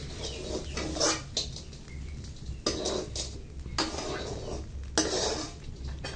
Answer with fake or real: real